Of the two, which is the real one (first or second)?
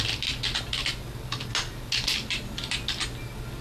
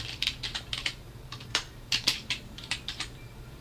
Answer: first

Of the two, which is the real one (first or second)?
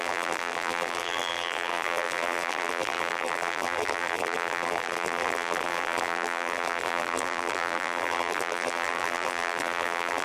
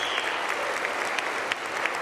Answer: second